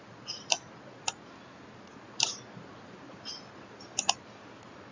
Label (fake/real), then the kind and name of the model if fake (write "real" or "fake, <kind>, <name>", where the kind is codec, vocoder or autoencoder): real